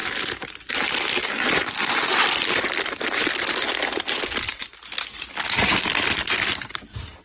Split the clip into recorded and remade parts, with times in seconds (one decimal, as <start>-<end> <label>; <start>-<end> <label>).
0.0-7.2 recorded